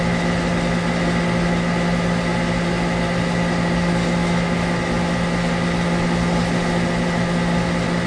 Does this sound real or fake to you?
real